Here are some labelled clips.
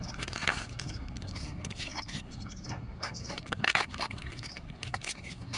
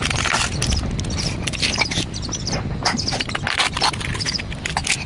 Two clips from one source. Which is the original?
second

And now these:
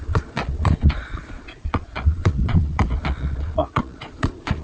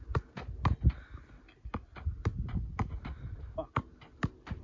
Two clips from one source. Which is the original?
second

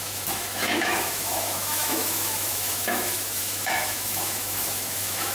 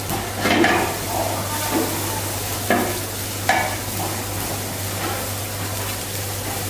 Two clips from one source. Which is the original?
second